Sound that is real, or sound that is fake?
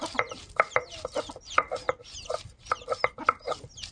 real